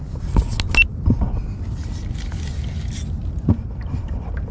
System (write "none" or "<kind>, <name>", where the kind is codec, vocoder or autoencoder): none